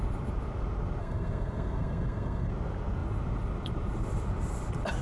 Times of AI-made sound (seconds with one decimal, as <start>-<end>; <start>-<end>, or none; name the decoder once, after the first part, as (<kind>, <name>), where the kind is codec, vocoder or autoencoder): 1.0-2.5 (codec, SNAC)